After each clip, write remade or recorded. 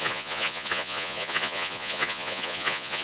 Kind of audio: remade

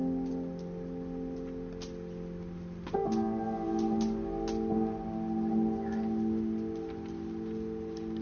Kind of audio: recorded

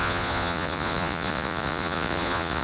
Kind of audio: remade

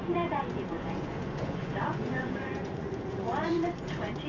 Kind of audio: remade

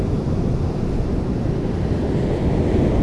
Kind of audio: recorded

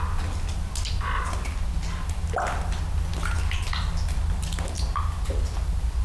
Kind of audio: recorded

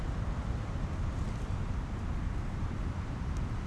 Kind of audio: recorded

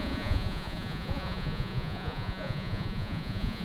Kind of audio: remade